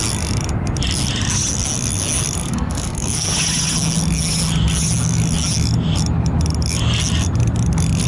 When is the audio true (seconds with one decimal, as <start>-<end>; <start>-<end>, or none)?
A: 0.0-2.4; 3.3-8.1